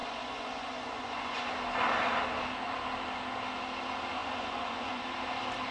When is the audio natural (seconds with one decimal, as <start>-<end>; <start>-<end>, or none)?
1.5-4.2; 5.0-5.7

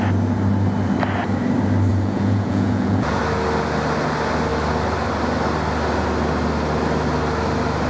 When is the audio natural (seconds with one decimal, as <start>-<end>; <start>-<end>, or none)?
0.0-1.9; 3.2-7.9

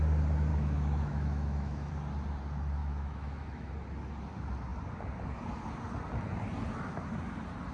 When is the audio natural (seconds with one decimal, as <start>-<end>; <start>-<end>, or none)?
0.0-0.5; 1.9-2.8; 3.7-7.7

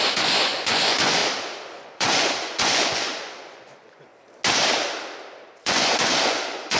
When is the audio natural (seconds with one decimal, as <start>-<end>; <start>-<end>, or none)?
1.2-1.7; 4.1-5.5

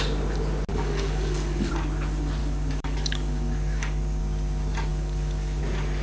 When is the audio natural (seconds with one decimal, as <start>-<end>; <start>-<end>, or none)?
0.0-0.7; 1.7-2.4; 4.2-4.9; 5.6-6.0

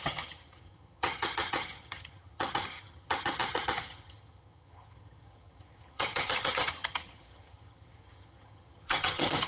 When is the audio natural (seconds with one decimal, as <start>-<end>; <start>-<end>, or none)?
none

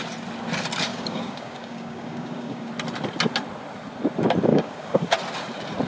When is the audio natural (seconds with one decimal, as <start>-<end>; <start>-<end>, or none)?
0.0-0.9; 2.7-4.5; 5.0-5.9